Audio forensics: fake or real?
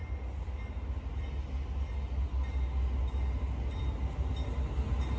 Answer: real